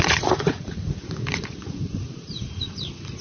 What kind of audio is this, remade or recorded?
remade